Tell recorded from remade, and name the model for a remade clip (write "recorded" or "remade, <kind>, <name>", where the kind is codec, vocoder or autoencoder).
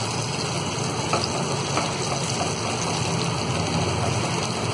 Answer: recorded